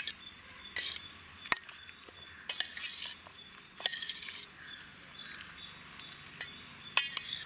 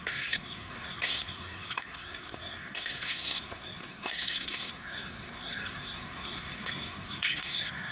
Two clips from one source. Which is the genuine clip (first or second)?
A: first